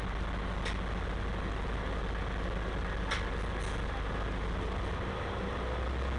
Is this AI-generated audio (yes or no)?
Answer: no